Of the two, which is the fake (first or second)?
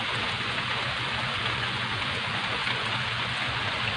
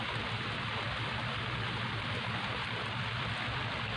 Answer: first